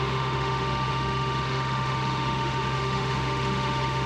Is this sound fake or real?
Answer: fake